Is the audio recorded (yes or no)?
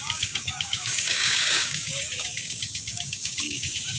no